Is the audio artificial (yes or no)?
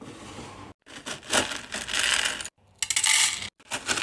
no